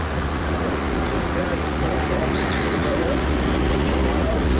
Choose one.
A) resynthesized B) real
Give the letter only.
A